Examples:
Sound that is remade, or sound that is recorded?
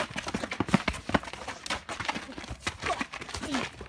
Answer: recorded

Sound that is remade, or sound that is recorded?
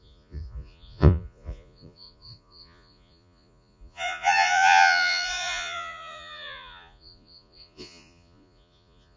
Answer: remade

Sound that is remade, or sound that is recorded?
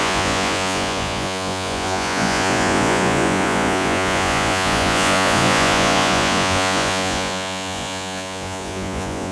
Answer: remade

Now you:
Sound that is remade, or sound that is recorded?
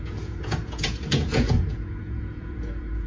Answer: remade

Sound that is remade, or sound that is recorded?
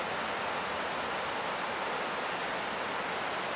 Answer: recorded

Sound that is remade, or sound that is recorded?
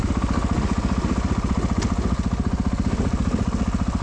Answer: recorded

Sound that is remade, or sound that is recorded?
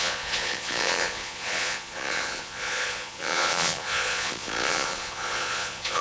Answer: remade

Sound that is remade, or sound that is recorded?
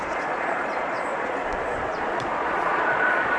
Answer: remade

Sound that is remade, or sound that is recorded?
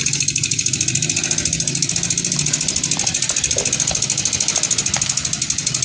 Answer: recorded